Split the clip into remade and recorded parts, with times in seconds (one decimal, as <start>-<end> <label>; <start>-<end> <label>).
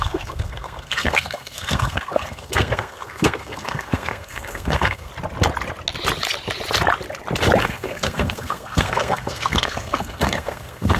0.0-5.1 remade; 5.1-7.6 recorded; 7.6-11.0 remade